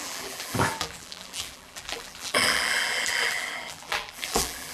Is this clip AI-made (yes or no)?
yes